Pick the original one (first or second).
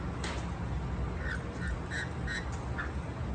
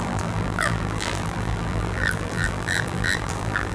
first